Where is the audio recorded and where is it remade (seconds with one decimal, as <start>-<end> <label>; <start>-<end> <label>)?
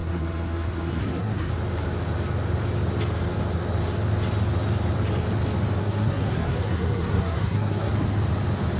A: 0.0-1.5 remade; 1.5-5.8 recorded; 5.8-7.9 remade; 7.9-8.8 recorded